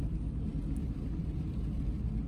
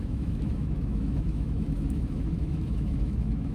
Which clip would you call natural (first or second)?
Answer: first